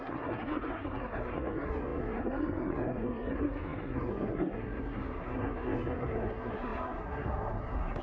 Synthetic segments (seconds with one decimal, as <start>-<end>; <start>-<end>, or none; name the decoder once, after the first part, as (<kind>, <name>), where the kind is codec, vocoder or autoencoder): 0.0-8.0 (codec, SNAC)